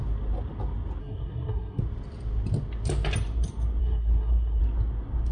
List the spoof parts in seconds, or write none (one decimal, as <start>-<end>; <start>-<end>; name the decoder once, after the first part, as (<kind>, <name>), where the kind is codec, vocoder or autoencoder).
1.0-1.8 (codec, SNAC); 3.8-4.6